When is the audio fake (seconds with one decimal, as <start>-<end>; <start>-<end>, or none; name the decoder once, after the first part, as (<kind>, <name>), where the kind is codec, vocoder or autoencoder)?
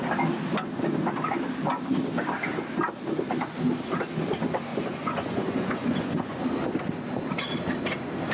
4.7-6.4 (vocoder, Vocos)